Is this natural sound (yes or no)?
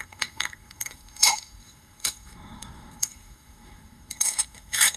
no